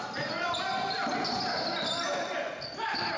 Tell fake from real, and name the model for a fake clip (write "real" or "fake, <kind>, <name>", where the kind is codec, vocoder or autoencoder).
real